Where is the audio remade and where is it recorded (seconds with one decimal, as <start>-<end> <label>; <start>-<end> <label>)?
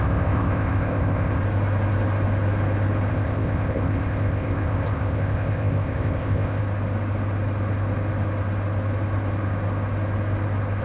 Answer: 0.0-1.4 remade; 1.4-3.1 recorded; 3.1-6.6 remade; 6.6-10.8 recorded